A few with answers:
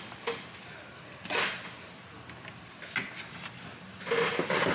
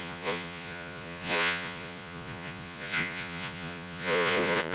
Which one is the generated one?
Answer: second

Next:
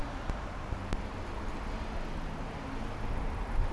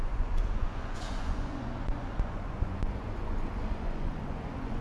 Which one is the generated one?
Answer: second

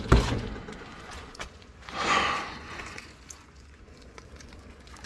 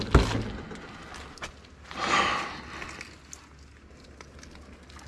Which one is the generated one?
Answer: first